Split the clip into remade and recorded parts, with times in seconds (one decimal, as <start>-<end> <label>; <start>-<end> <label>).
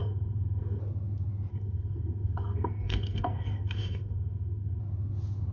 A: 0.0-0.8 remade; 0.8-1.5 recorded; 1.5-4.8 remade; 4.8-5.5 recorded